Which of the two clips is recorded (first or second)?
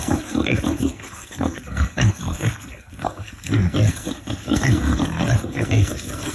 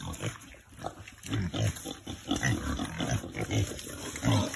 second